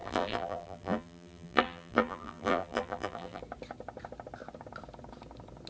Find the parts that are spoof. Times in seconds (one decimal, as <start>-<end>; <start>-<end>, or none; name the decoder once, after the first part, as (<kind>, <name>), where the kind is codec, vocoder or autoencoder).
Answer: 0.0-3.4 (vocoder, BigVGAN v2)